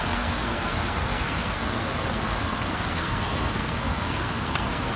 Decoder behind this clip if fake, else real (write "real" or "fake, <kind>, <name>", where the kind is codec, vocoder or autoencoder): fake, codec, SNAC